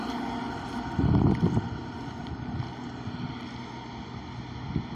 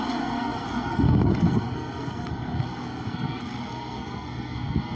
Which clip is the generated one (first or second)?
second